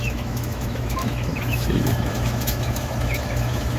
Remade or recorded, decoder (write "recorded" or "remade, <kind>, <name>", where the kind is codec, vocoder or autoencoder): remade, autoencoder, DAC-VAE